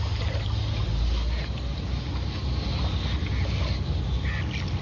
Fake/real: real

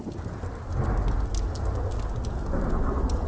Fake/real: real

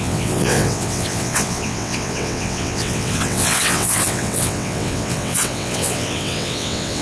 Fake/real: fake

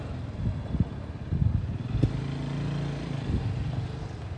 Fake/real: real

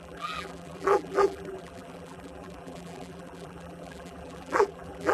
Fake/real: fake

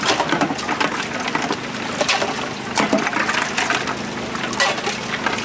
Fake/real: real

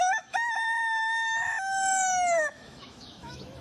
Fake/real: fake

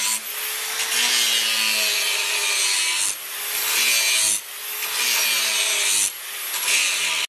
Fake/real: real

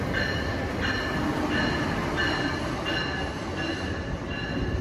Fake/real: real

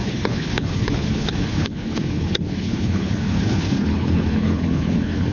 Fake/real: fake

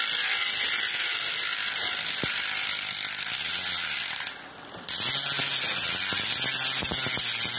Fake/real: real